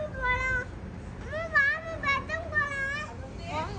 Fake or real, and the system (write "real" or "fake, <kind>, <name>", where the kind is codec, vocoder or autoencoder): real